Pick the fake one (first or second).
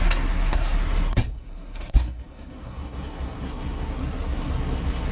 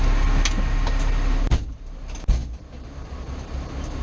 first